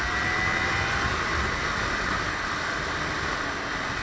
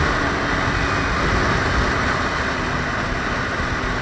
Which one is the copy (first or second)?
first